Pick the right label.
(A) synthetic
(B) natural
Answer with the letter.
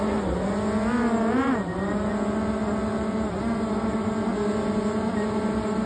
B